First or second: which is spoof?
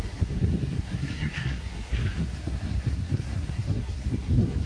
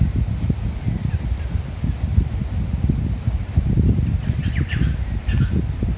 first